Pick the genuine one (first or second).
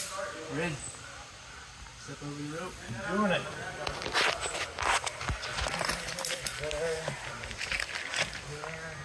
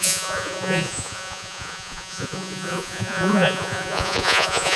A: first